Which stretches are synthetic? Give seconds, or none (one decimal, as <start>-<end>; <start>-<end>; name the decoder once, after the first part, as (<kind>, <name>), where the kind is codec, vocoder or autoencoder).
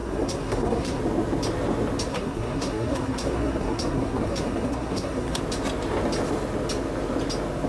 0.0-1.0 (codec, SNAC); 2.1-5.4